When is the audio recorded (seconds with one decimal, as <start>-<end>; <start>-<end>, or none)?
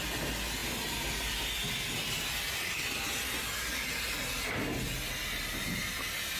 0.0-6.4